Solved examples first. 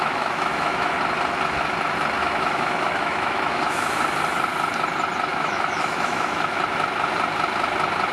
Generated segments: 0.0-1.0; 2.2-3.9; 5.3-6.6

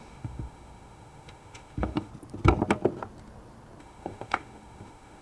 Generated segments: 0.0-2.1; 3.8-5.2

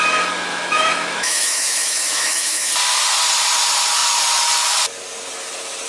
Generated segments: 0.5-2.7

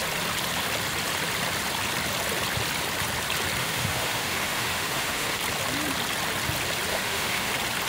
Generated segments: 3.6-5.4; 6.9-7.5

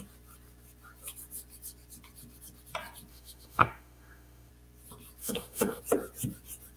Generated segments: 3.1-4.5; 5.2-5.8